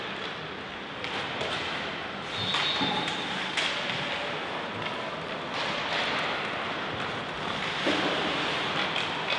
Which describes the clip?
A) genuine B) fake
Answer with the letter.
A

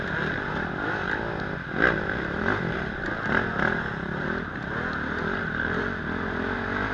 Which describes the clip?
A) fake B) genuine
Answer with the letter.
B